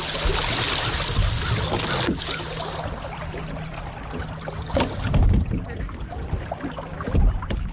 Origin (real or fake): real